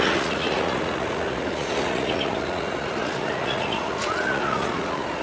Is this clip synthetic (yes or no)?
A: yes